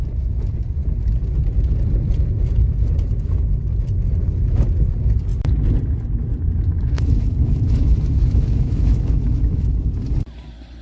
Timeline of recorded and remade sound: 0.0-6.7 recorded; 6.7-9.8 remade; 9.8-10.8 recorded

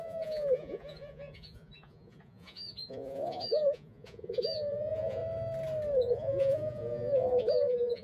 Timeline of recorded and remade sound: 0.0-5.2 remade; 5.2-6.0 recorded; 6.0-8.0 remade

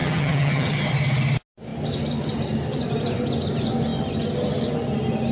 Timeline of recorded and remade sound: 0.0-0.9 remade; 0.9-5.3 recorded

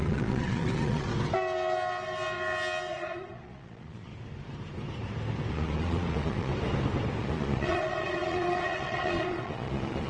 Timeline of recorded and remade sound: 0.0-1.1 remade; 1.1-2.9 recorded; 2.9-4.1 remade; 4.1-5.5 recorded; 5.5-6.5 remade; 6.5-7.2 recorded; 7.2-10.1 remade

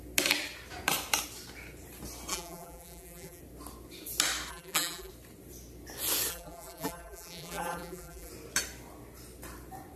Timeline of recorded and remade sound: 0.0-2.3 recorded; 2.3-3.4 remade; 3.4-4.5 recorded; 4.5-5.1 remade; 5.1-6.3 recorded; 6.3-8.3 remade; 8.3-10.0 recorded